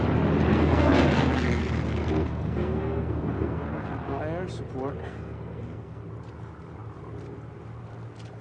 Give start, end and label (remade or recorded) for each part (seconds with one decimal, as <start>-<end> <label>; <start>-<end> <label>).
0.0-0.5 recorded; 0.5-4.2 remade; 4.2-5.0 recorded; 5.0-6.0 remade; 6.0-8.4 recorded